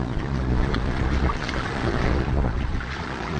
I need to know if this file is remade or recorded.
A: remade